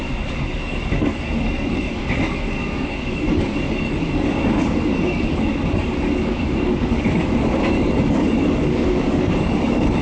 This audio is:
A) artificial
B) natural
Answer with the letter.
A